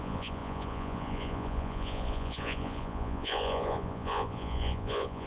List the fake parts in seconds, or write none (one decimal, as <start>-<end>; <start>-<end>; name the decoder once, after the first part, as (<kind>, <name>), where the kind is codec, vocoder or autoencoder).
0.0-5.3 (vocoder, Vocos)